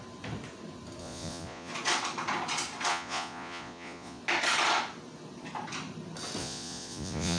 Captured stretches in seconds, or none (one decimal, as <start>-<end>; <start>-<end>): 0.0-1.0; 1.7-2.9; 4.2-6.4